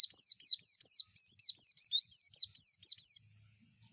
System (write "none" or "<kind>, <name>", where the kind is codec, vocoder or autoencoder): none